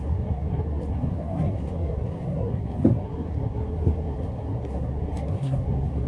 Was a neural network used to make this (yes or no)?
yes